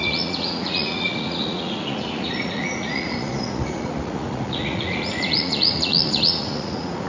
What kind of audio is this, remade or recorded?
remade